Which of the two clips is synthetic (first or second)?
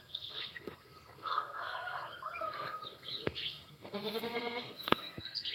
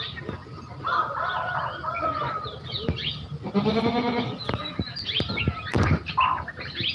first